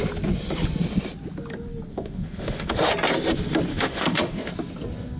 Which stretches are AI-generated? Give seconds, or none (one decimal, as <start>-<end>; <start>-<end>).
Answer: 1.9-2.9; 3.7-4.5